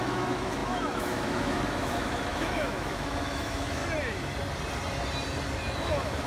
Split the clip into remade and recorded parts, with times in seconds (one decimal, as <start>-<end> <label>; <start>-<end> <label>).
0.0-3.8 remade; 3.8-5.8 recorded; 5.8-6.3 remade